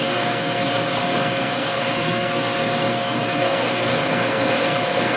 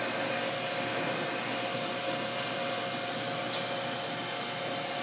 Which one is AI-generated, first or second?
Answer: first